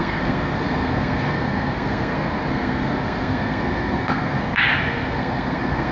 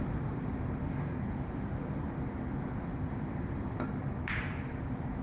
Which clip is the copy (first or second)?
first